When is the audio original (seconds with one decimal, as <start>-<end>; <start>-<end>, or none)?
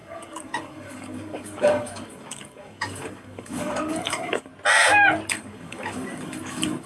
4.5-5.3